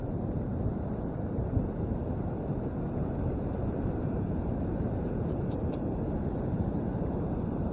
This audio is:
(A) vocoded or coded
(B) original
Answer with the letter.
A